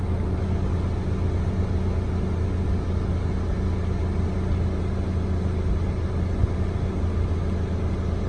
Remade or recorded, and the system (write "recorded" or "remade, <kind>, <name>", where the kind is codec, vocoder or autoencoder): recorded